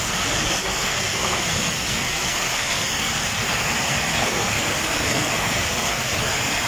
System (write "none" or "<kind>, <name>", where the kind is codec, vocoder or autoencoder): codec, SNAC